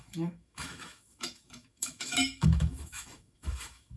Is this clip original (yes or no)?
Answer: no